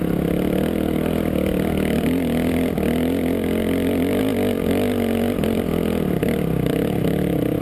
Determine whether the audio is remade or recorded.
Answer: recorded